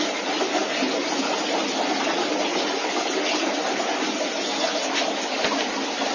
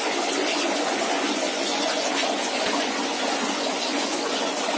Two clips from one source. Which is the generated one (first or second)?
second